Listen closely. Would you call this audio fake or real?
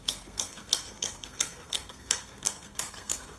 fake